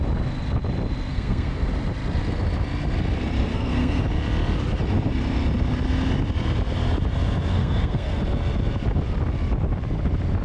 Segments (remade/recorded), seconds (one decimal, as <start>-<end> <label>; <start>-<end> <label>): 0.0-1.1 recorded; 1.1-1.7 remade; 1.7-3.5 recorded; 3.5-4.0 remade; 4.0-7.5 recorded; 7.5-8.2 remade; 8.2-10.4 recorded